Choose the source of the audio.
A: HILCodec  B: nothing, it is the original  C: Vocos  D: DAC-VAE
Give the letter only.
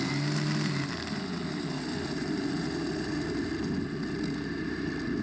B